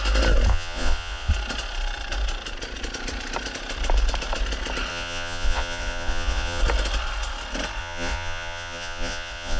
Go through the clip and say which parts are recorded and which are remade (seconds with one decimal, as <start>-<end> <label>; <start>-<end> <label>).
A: 0.0-0.5 recorded; 0.5-1.3 remade; 1.3-4.9 recorded; 4.9-6.6 remade; 6.6-7.8 recorded; 7.8-9.6 remade